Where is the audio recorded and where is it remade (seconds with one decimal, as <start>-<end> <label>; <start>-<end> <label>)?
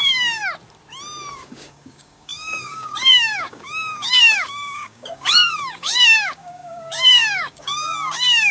0.0-0.4 remade; 0.4-1.3 recorded; 1.3-8.5 remade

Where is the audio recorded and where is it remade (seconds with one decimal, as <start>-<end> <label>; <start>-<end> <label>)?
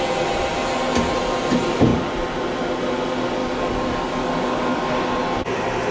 0.0-3.4 recorded; 3.4-4.9 remade; 4.9-5.9 recorded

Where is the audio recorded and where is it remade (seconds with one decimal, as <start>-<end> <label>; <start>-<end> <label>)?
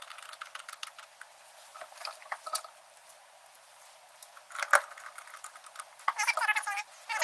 0.0-1.7 recorded; 1.7-6.0 remade; 6.0-7.2 recorded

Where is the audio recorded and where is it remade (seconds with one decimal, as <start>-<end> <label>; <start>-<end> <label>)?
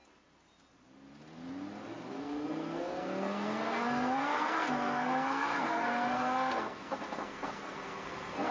0.0-2.1 recorded; 2.1-8.5 remade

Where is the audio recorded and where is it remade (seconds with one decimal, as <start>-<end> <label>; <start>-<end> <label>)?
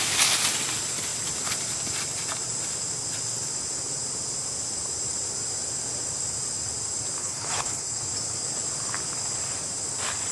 0.0-7.2 recorded; 7.2-8.0 remade; 8.0-10.3 recorded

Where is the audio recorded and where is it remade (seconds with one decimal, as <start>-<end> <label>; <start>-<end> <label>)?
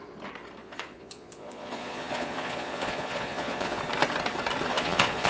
0.0-0.6 recorded; 0.6-3.8 remade; 3.8-4.7 recorded; 4.7-5.3 remade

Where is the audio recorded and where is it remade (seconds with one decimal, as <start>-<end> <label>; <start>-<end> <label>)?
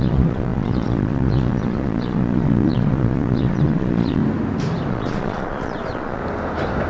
0.0-4.2 remade; 4.2-4.9 recorded; 4.9-6.2 remade; 6.2-6.9 recorded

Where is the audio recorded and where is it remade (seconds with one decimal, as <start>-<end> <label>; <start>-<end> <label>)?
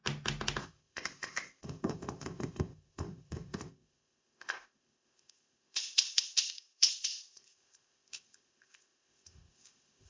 0.0-0.6 recorded; 0.6-10.1 remade